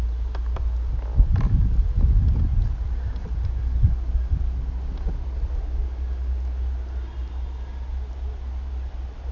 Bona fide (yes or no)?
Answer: yes